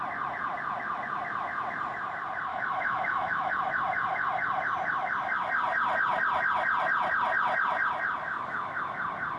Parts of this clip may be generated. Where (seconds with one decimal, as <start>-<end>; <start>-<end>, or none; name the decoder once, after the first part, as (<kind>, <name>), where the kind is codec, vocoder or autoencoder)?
2.5-3.5 (autoencoder, DAC-VAE)